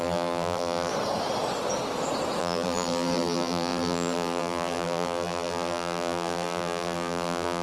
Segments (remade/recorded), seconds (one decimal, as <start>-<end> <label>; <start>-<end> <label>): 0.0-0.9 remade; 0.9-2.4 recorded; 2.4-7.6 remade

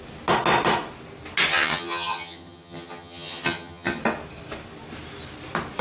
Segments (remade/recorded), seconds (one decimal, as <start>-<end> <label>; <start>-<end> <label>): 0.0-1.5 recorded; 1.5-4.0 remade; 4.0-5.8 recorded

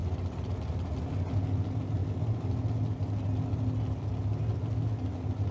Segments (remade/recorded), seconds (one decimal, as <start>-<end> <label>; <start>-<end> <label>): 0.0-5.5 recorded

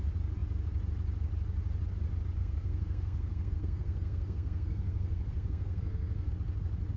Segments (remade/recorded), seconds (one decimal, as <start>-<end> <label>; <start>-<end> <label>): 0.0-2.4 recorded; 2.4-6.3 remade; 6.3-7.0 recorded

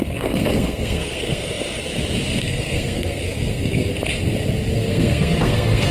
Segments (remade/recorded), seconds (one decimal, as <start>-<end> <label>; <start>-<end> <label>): 0.0-1.9 remade; 1.9-2.4 recorded; 2.4-3.9 remade; 3.9-4.7 recorded; 4.7-5.9 remade

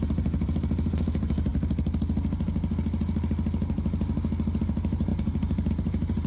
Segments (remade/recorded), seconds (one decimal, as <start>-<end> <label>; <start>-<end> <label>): 0.0-1.5 remade; 1.5-4.6 recorded; 4.6-6.3 remade